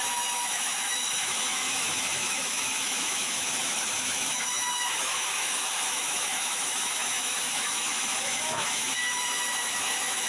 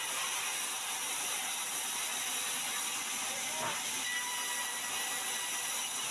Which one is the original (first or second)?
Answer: second